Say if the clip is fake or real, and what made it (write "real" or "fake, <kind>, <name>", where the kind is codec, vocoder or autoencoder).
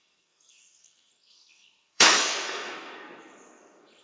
fake, codec, SNAC